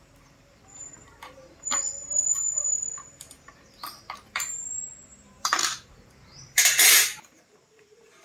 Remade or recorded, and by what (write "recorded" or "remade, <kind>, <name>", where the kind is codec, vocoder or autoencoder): remade, vocoder, BigVGAN v2